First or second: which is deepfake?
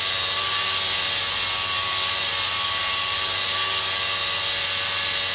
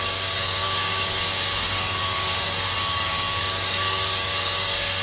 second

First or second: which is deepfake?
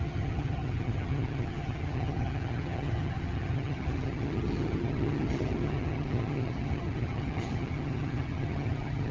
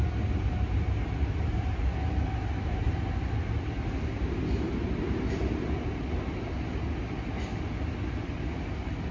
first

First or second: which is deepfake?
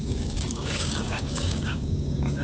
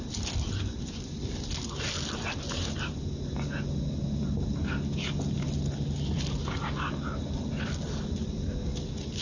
first